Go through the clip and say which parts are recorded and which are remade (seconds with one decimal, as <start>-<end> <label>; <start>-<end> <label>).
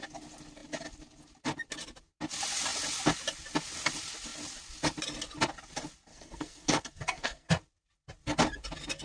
0.0-6.1 recorded; 6.1-7.5 remade; 7.5-9.0 recorded